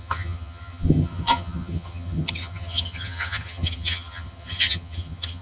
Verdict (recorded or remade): remade